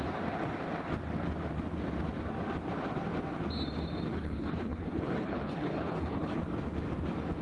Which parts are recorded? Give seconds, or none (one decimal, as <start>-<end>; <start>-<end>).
0.0-4.1; 6.4-7.4

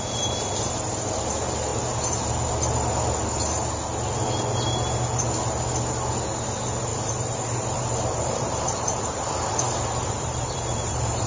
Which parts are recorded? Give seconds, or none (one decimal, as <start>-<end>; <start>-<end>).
0.0-6.9

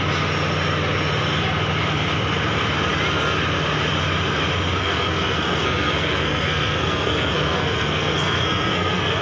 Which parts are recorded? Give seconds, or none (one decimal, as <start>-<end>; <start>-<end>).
0.0-4.8

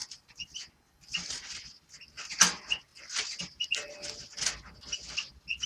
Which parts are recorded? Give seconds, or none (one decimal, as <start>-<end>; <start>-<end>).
0.0-5.7

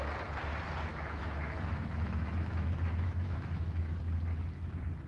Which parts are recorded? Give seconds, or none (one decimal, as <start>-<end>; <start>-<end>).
0.0-0.9; 4.0-5.1

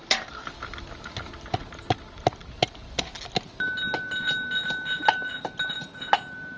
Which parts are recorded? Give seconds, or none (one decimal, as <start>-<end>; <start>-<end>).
0.0-6.6

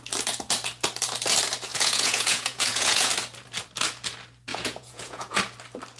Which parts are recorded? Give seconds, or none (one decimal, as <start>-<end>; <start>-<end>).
0.0-1.7; 3.1-4.5; 5.4-6.0